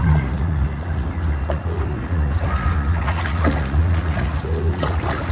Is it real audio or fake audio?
fake